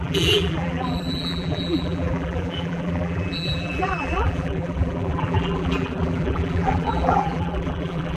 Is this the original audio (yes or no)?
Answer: no